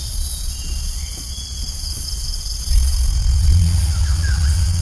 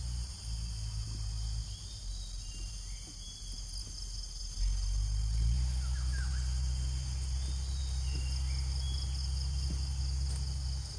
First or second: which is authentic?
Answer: second